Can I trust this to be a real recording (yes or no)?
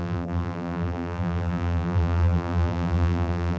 no